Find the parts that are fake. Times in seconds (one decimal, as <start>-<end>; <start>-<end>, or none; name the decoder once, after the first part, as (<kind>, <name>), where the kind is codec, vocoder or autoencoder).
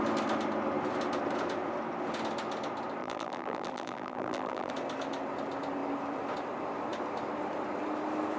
3.0-4.7 (vocoder, BigVGAN v2)